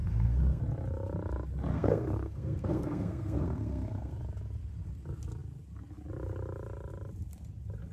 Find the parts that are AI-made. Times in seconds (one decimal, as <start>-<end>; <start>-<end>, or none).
0.0-0.6; 1.7-4.2